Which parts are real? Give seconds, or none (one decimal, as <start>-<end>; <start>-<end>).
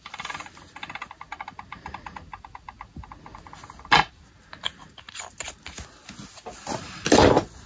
0.0-7.7